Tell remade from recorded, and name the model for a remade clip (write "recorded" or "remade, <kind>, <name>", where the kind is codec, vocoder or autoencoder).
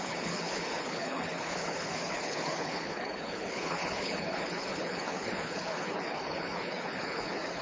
remade, codec, HILCodec